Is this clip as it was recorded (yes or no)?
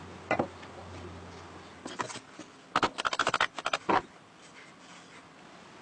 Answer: yes